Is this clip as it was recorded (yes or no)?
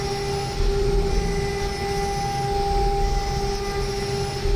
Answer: yes